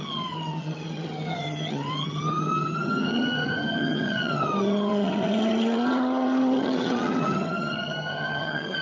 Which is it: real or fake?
fake